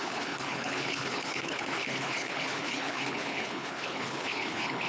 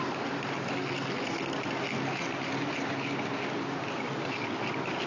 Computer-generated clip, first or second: first